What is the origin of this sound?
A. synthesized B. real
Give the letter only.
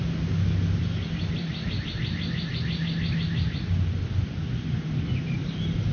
B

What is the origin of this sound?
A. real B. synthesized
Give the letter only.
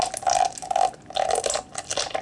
A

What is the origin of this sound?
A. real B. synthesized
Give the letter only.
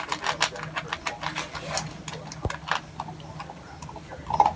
A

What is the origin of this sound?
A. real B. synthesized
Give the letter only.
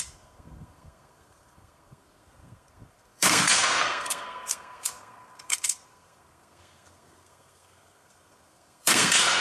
B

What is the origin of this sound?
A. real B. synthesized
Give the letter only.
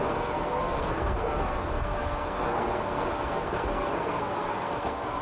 B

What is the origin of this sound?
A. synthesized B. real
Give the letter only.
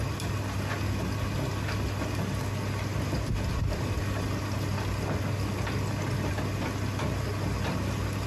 B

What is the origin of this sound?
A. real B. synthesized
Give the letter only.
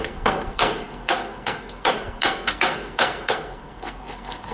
B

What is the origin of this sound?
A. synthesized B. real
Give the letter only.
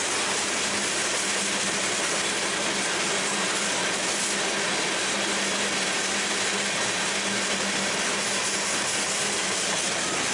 B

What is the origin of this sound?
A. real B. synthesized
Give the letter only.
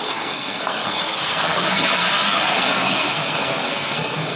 B